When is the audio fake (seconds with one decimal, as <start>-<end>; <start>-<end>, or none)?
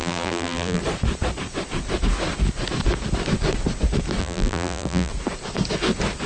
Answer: 0.0-0.8; 4.2-5.1